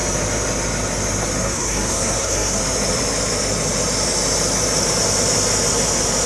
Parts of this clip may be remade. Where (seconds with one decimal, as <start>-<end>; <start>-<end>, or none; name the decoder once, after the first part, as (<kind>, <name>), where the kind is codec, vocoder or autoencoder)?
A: 1.4-2.6 (codec, SNAC)